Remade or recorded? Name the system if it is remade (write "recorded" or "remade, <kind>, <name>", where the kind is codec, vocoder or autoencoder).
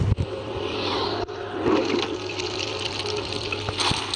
recorded